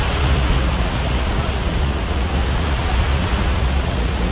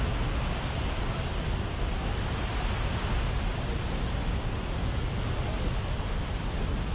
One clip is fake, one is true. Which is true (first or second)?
second